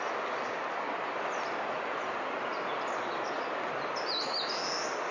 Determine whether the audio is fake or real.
real